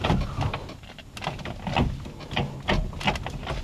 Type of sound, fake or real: real